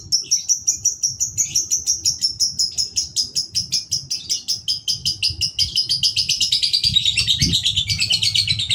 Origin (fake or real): real